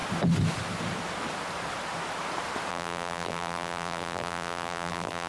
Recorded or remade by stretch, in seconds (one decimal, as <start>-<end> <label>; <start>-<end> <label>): 0.0-2.7 recorded; 2.7-5.3 remade